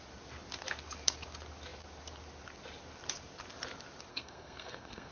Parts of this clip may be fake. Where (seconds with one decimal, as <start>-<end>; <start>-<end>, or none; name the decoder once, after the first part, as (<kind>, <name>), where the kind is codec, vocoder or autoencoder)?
4.1-5.1 (codec, SNAC)